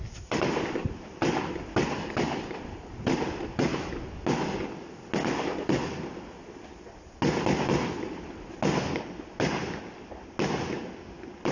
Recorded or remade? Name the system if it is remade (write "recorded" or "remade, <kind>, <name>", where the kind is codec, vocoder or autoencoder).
recorded